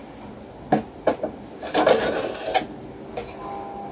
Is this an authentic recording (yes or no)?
yes